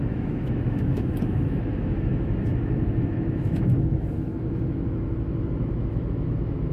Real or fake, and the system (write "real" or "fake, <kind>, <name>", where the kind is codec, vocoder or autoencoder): fake, autoencoder, DAC-VAE